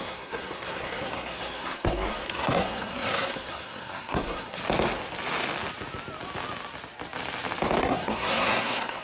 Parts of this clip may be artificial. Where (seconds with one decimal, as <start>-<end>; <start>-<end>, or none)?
0.0-4.6; 7.8-9.0